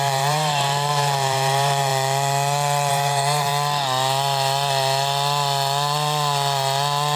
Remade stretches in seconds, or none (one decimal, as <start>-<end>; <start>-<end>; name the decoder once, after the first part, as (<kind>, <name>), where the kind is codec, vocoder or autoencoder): 0.0-1.9 (vocoder, BigVGAN v2); 2.9-3.5